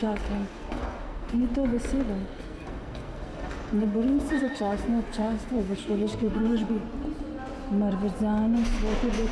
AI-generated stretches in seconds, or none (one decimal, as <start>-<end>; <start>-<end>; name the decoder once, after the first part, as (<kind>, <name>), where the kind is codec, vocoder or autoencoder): 0.0-1.4 (codec, SNAC); 2.2-6.7